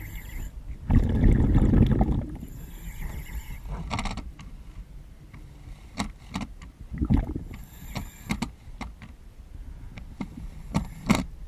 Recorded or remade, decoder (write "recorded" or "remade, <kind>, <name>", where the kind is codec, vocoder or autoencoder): recorded